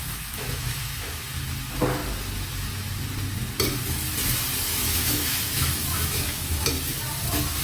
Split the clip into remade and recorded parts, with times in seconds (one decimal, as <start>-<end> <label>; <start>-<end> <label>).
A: 0.0-1.2 remade; 1.2-4.7 recorded; 4.7-6.7 remade; 6.7-7.6 recorded